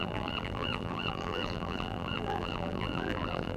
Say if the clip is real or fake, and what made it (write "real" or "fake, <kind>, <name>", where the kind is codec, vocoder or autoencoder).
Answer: fake, vocoder, BigVGAN v2